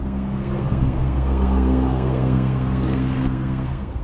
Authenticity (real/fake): fake